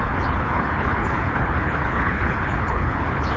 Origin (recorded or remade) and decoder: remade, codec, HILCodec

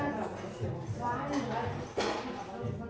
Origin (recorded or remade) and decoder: recorded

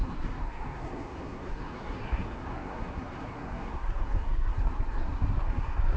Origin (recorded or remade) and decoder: remade, codec, SNAC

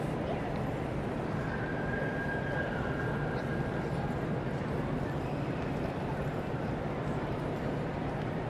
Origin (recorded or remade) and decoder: remade, vocoder, BigVGAN v2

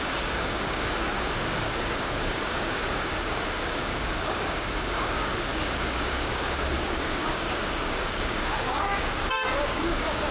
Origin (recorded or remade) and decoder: remade, codec, DAC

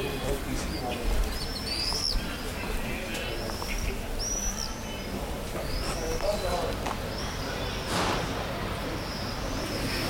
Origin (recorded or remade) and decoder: recorded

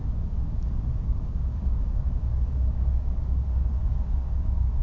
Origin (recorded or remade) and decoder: remade, codec, DAC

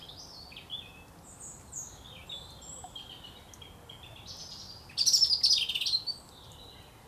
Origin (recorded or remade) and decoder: recorded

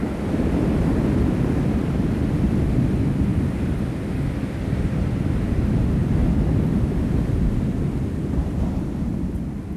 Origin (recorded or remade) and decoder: recorded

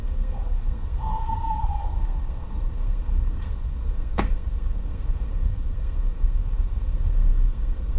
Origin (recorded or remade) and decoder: remade, codec, SNAC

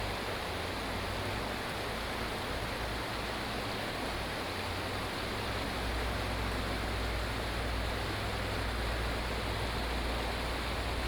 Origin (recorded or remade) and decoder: recorded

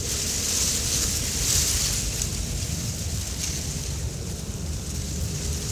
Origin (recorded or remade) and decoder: recorded